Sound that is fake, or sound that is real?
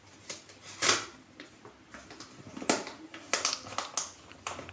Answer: real